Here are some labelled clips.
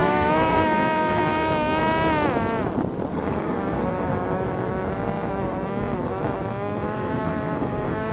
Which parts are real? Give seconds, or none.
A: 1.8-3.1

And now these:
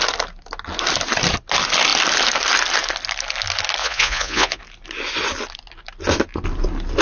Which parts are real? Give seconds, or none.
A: 0.0-3.8; 4.6-7.0

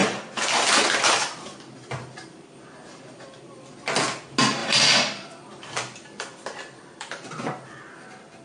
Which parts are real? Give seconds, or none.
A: 3.8-4.6; 7.3-8.4

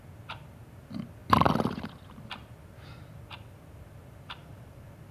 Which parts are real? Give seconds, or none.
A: 0.0-5.1

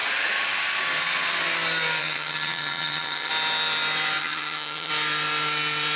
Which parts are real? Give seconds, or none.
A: 0.0-2.0; 3.3-4.2; 4.9-6.0

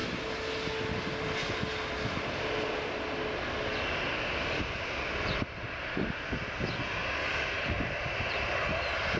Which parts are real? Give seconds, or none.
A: 0.0-9.2